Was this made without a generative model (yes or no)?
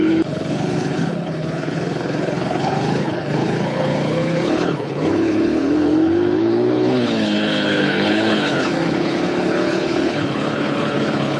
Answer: no